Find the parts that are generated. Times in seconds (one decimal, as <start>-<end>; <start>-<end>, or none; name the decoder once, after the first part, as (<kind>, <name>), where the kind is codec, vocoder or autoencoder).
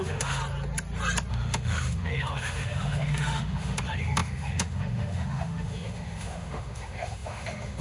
0.0-0.4 (autoencoder, DAC-VAE); 1.3-7.8